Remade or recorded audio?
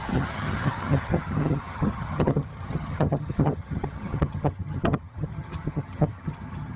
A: remade